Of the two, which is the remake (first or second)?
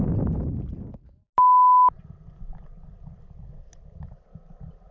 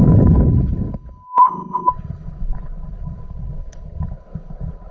second